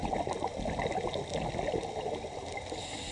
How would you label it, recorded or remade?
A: recorded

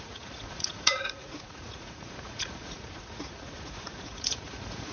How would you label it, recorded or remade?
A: remade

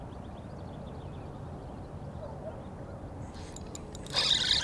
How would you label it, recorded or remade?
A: recorded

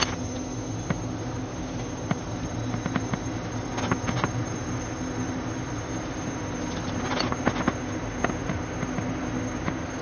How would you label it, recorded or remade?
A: recorded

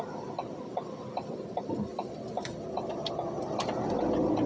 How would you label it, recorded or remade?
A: recorded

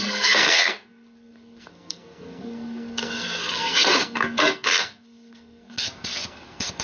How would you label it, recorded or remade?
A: remade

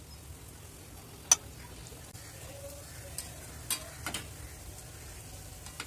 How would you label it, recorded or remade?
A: recorded